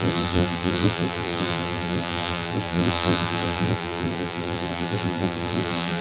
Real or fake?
fake